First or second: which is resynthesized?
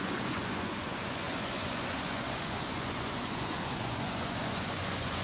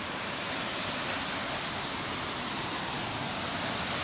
first